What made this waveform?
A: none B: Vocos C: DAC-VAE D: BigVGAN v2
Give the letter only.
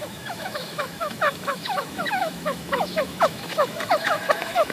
C